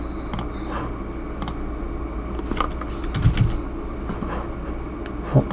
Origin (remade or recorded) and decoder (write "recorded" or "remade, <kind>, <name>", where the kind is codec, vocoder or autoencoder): recorded